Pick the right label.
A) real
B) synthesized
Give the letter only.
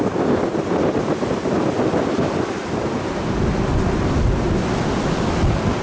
A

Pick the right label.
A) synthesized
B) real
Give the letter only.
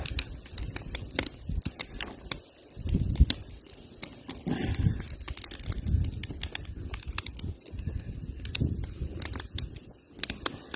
B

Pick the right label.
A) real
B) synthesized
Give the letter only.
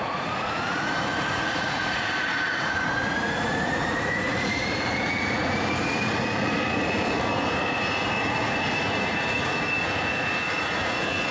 B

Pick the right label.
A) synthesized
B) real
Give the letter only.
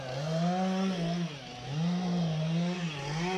B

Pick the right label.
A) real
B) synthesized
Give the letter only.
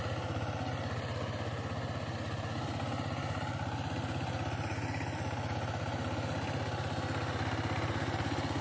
A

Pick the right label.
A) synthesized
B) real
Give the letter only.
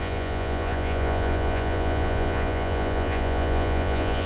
A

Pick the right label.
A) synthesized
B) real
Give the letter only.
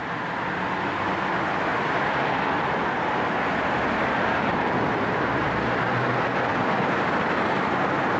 B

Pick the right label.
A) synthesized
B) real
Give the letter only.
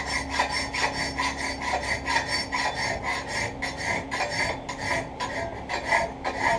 B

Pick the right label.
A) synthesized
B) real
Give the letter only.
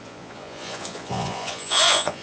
A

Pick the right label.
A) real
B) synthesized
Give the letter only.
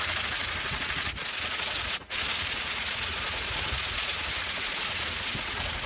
B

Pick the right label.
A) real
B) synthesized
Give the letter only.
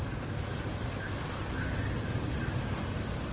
A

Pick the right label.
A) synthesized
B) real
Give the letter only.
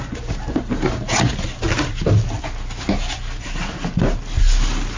B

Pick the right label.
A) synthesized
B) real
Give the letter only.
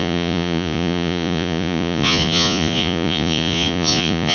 A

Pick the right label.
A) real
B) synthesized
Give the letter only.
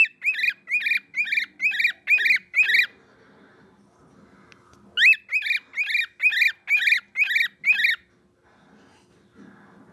A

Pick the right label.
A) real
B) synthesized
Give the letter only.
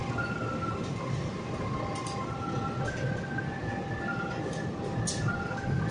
A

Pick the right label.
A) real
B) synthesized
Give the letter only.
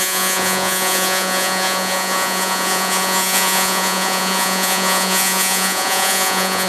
B